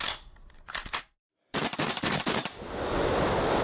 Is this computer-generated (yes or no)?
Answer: no